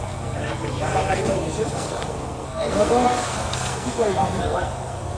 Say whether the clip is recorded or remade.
remade